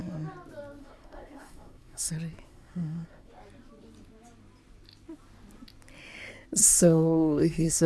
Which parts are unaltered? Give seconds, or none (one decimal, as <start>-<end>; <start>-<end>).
0.0-0.8; 2.1-2.5; 3.3-6.6

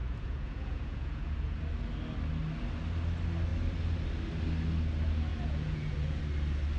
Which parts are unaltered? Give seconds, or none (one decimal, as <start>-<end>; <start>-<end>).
1.6-5.3; 6.2-6.8

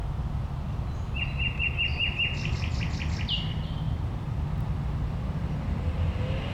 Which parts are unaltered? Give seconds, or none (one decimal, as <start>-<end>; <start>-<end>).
0.0-6.5

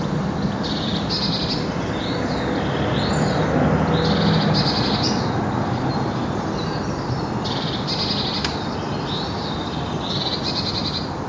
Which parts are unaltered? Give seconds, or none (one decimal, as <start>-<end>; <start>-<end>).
0.0-11.3

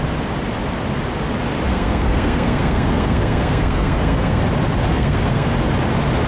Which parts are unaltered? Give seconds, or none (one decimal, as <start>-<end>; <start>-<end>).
0.0-1.7; 4.4-4.9; 5.5-6.3